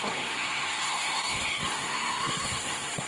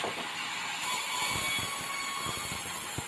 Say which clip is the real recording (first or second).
second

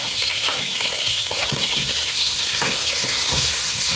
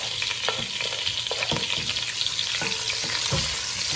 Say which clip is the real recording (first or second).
second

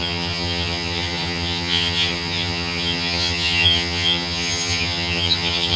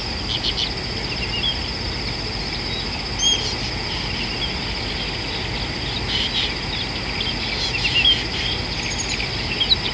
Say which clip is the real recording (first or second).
second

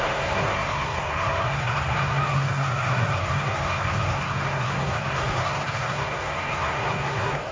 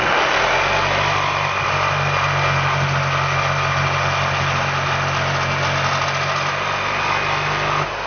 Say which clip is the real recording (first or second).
second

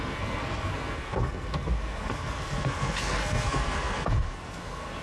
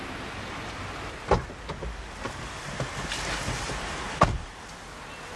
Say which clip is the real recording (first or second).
second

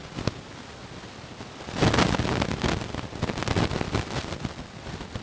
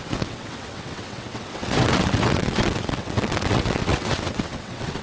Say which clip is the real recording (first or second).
first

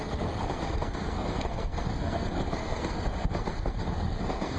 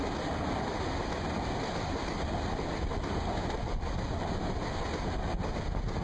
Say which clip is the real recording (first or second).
second